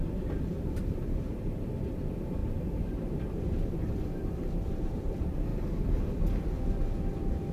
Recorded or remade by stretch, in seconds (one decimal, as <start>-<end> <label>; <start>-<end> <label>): 0.0-5.5 remade; 5.5-7.5 recorded

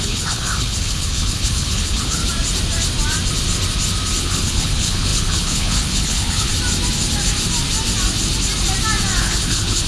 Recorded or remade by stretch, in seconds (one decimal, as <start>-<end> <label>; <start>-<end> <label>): 0.0-2.2 remade; 2.2-4.2 recorded; 4.2-6.5 remade; 6.5-9.2 recorded; 9.2-9.9 remade

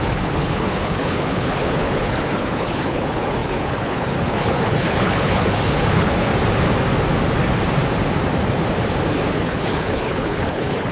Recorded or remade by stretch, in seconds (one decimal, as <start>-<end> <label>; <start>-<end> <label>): 0.0-6.3 remade; 6.3-9.1 recorded; 9.1-10.9 remade

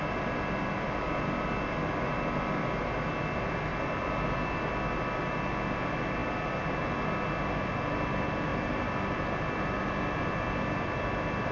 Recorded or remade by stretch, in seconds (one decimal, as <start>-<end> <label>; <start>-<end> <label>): 0.0-8.5 recorded; 8.5-9.9 remade; 9.9-11.5 recorded

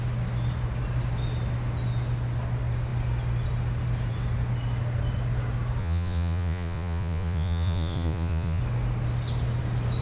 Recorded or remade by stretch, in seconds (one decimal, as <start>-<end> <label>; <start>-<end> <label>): 0.0-5.8 recorded; 5.8-8.6 remade; 8.6-10.0 recorded

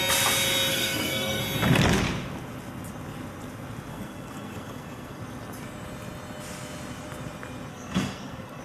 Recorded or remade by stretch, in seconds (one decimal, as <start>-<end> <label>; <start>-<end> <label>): 0.0-0.7 recorded; 0.7-1.4 remade; 1.4-3.9 recorded; 3.9-5.2 remade; 5.2-7.7 recorded; 7.7-8.6 remade

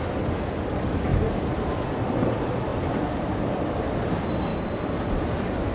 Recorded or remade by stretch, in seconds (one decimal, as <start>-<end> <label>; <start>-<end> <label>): 0.0-1.1 recorded; 1.1-1.7 remade; 1.7-4.5 recorded; 4.5-5.1 remade; 5.1-5.7 recorded

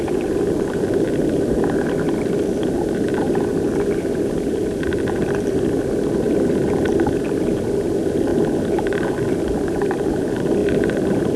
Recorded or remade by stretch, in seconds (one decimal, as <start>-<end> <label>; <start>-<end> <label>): 0.0-8.3 recorded; 8.3-9.4 remade; 9.4-10.6 recorded; 10.6-11.4 remade